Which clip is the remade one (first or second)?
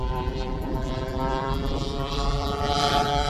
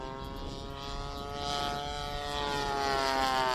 first